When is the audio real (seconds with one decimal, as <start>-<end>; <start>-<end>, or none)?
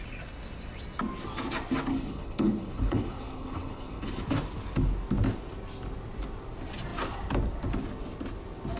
0.0-1.9; 4.2-8.8